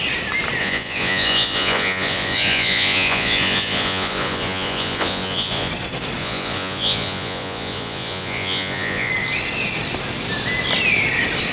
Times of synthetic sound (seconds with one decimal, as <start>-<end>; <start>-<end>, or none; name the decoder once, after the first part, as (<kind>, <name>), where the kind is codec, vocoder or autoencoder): 0.6-5.7 (vocoder, Vocos); 6.2-9.1